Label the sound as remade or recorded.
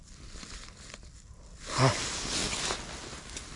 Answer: recorded